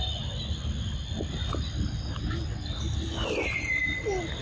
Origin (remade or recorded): recorded